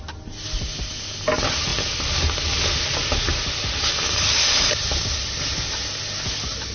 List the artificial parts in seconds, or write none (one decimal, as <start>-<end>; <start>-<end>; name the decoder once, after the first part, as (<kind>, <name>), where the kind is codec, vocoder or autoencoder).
none